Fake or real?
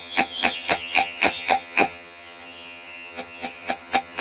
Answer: fake